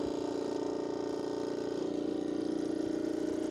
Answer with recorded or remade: recorded